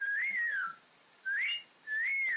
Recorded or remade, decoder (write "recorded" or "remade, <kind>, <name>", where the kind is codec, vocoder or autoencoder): recorded